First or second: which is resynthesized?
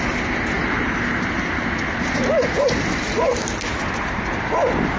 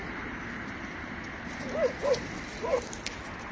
second